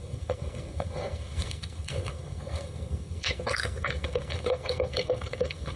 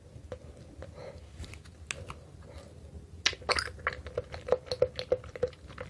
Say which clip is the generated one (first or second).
first